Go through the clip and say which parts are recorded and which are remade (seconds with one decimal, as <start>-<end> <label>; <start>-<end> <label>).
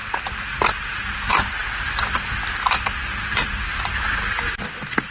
0.0-1.0 remade; 1.0-5.1 recorded